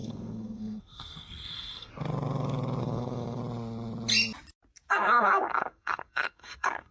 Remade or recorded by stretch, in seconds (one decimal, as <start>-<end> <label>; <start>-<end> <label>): 0.0-1.9 remade; 1.9-2.8 recorded; 2.8-3.4 remade; 3.4-4.9 recorded; 4.9-6.9 remade